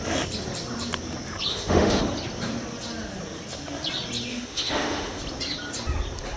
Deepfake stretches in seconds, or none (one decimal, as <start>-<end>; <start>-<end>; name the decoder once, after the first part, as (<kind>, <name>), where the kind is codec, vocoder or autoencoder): 1.5-2.0 (autoencoder, DAC-VAE); 4.3-5.2